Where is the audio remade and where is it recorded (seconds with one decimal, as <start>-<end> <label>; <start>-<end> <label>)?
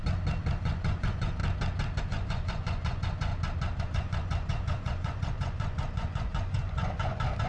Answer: 0.0-0.6 recorded; 0.6-1.4 remade; 1.4-2.0 recorded; 2.0-3.3 remade; 3.3-3.8 recorded; 3.8-7.5 remade